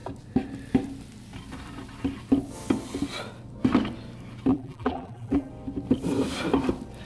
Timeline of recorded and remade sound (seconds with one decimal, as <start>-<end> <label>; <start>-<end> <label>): 0.0-4.5 recorded; 4.5-5.5 remade; 5.5-7.1 recorded

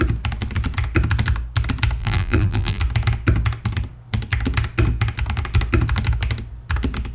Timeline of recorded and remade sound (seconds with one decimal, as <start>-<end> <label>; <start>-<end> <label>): 0.0-2.0 recorded; 2.0-2.8 remade; 2.8-7.1 recorded

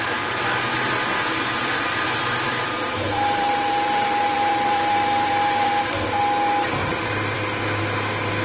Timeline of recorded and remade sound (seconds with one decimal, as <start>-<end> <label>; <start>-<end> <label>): 0.0-0.7 recorded; 0.7-5.7 remade; 5.7-6.8 recorded; 6.8-7.8 remade; 7.8-8.4 recorded

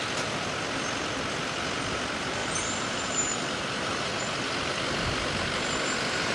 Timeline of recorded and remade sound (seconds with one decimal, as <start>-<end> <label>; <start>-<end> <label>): 0.0-2.4 recorded; 2.4-4.1 remade; 4.1-6.3 recorded

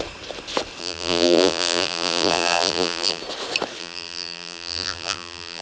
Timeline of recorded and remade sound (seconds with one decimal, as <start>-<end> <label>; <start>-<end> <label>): 0.0-0.8 recorded; 0.8-3.2 remade; 3.2-3.8 recorded; 3.8-5.6 remade